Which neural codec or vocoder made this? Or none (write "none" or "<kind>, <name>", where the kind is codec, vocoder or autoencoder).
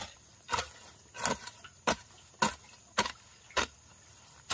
none